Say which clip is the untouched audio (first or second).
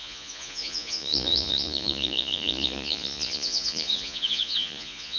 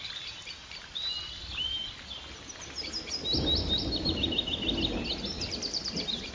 second